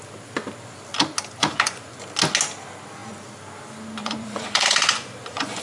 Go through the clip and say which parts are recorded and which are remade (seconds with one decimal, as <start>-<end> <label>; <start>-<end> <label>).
0.0-1.4 recorded; 1.4-2.0 remade; 2.0-4.0 recorded; 4.0-5.6 remade